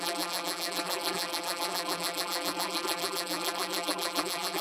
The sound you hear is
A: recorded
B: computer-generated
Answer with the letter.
B